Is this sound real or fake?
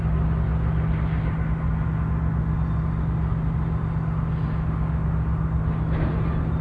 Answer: real